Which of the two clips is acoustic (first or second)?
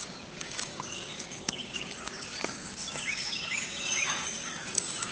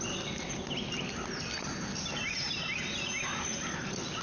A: second